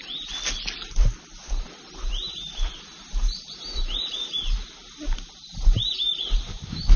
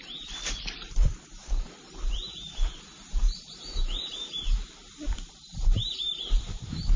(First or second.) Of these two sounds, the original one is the first